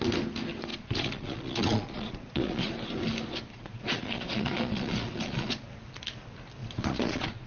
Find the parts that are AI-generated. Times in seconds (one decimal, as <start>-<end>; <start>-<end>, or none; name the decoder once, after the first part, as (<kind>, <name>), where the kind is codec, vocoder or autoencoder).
0.7-2.7 (vocoder, Vocos); 3.5-5.5; 6.6-7.5